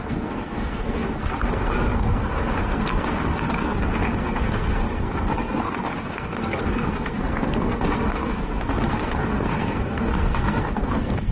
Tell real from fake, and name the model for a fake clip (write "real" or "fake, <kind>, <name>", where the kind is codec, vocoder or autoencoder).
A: fake, codec, SNAC